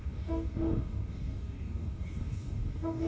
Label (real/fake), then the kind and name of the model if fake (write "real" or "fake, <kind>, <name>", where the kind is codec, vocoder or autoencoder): fake, codec, DAC